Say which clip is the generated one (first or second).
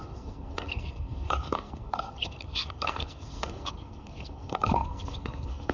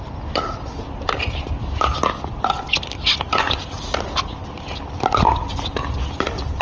first